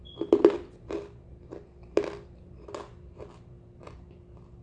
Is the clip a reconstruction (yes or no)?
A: no